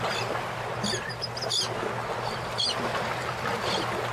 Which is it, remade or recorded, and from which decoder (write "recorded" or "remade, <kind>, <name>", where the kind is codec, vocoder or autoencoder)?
recorded